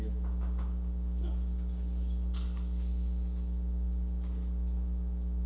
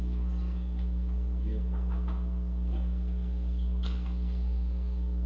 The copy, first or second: second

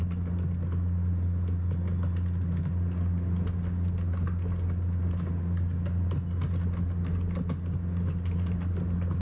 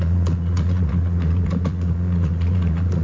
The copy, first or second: second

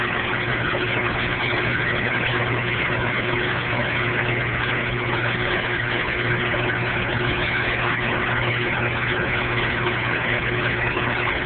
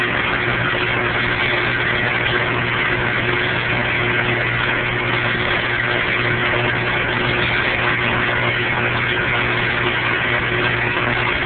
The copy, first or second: first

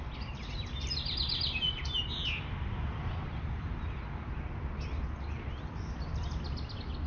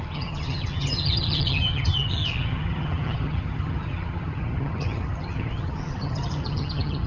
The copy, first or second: second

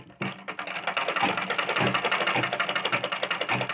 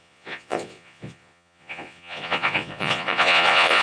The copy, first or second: second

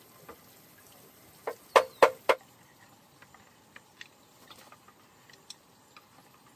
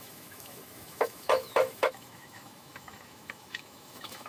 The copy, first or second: second